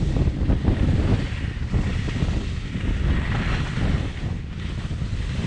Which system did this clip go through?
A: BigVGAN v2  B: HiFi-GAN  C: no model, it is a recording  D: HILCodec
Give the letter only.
C